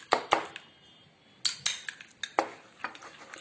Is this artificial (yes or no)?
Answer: no